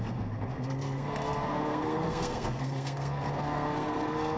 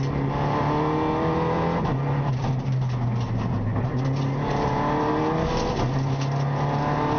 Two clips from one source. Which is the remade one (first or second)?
first